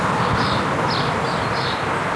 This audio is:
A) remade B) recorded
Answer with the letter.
B